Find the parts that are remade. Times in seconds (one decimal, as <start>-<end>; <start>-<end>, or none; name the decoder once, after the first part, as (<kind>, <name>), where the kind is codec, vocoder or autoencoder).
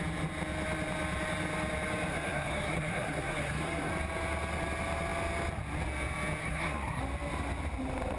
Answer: 2.1-3.9 (codec, SNAC); 6.4-7.0